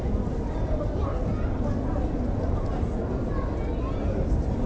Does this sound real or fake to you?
real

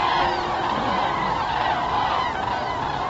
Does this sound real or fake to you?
real